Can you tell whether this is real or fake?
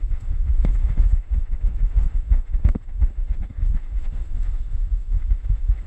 fake